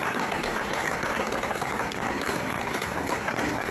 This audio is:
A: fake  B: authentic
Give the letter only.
A